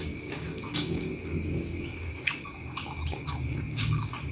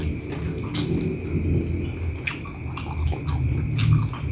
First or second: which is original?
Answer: second